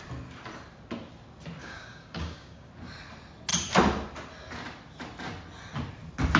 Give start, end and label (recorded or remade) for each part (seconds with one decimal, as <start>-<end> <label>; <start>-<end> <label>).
0.0-1.6 recorded; 1.6-2.7 remade; 2.7-6.4 recorded